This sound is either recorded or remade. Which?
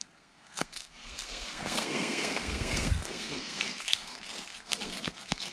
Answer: remade